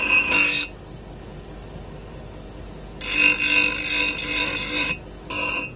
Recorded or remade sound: recorded